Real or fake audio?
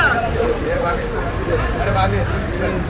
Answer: real